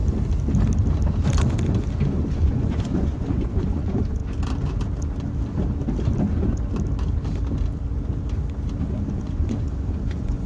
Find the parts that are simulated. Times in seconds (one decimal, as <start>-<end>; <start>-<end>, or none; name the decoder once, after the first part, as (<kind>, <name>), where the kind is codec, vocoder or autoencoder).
2.3-4.2 (vocoder, Vocos); 9.1-10.5